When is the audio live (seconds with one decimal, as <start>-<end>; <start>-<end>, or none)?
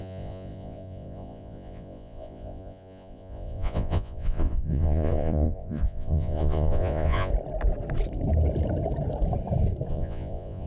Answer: 7.3-9.9